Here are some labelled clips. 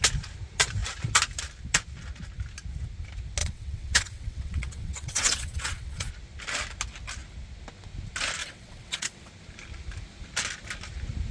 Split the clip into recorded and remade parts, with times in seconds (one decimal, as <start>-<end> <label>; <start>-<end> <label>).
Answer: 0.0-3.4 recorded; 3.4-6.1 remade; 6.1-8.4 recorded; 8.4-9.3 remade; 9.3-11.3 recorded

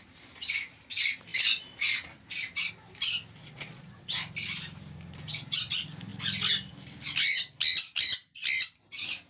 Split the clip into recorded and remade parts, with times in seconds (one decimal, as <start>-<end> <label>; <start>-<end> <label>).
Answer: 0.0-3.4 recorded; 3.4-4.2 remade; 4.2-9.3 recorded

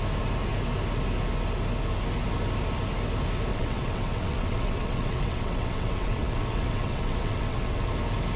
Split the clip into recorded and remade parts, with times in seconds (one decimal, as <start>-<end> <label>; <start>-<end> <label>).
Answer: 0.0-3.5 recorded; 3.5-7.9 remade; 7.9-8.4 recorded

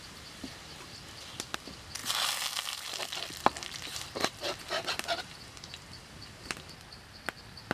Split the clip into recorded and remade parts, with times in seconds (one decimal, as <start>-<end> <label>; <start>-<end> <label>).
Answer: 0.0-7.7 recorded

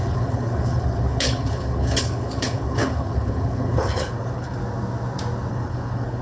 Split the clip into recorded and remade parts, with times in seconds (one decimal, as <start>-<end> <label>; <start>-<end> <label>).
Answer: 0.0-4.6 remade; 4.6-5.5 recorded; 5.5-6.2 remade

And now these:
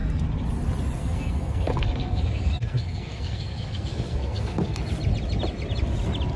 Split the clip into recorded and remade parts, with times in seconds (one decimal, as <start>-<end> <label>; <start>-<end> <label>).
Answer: 0.0-1.0 recorded; 1.0-4.8 remade; 4.8-6.4 recorded